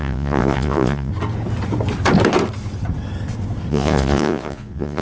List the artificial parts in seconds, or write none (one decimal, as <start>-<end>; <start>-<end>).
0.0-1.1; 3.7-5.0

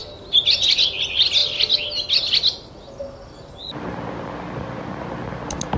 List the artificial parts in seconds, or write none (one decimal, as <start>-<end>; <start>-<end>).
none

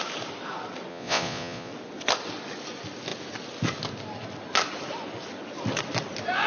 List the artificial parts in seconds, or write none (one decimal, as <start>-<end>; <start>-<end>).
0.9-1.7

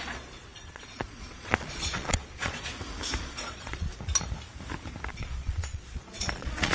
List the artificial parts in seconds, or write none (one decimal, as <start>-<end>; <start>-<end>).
0.0-2.7; 3.2-3.9; 5.1-6.7

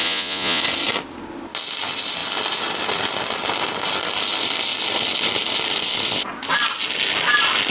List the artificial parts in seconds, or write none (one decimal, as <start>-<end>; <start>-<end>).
0.0-0.6